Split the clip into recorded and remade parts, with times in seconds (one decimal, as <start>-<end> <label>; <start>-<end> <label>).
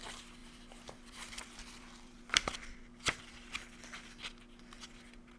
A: 0.0-0.4 recorded; 0.4-3.3 remade; 3.3-5.4 recorded